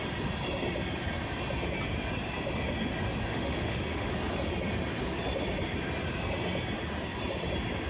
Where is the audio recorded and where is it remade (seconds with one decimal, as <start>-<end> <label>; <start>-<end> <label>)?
0.0-3.3 recorded; 3.3-4.1 remade; 4.1-7.9 recorded